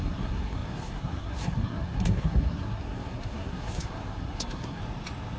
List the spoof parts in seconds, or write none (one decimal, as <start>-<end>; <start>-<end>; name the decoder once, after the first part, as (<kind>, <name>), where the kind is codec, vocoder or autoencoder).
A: 0.0-4.8 (codec, SNAC)